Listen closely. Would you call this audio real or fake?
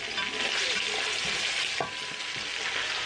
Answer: real